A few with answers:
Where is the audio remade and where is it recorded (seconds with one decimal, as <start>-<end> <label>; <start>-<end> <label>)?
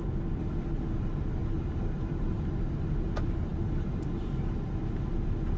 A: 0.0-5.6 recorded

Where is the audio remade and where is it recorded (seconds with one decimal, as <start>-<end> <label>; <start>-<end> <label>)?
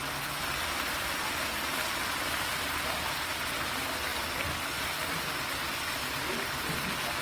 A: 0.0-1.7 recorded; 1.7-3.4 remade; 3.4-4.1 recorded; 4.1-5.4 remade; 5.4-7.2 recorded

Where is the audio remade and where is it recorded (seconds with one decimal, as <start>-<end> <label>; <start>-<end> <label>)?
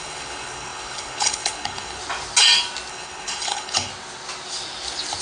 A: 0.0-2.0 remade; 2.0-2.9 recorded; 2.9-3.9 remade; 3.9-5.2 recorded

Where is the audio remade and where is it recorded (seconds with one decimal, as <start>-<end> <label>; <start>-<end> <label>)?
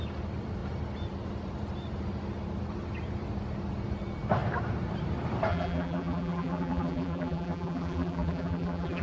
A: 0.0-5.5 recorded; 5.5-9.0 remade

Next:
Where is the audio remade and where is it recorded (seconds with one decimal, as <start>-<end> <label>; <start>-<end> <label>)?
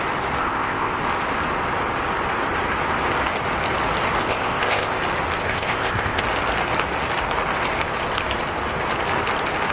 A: 0.0-0.4 recorded; 0.4-1.0 remade; 1.0-4.2 recorded; 4.2-5.0 remade; 5.0-5.4 recorded; 5.4-6.2 remade; 6.2-9.7 recorded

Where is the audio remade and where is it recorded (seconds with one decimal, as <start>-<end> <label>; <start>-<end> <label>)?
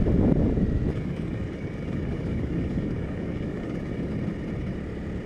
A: 0.0-0.9 recorded; 0.9-4.1 remade; 4.1-5.3 recorded